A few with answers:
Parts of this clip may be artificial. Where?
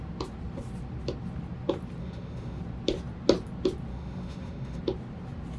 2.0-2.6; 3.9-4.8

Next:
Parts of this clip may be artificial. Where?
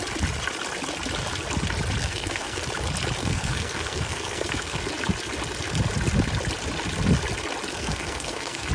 2.0-2.6; 3.2-4.8; 7.7-8.7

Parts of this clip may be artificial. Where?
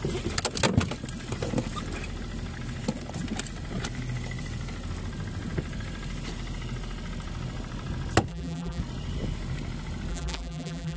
8.3-8.8; 10.1-11.0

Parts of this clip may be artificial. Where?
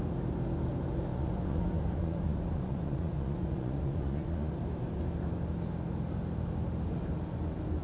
1.1-4.5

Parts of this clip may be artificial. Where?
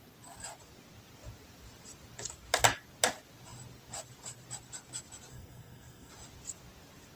5.3-6.1